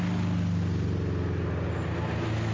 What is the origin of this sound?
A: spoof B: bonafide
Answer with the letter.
B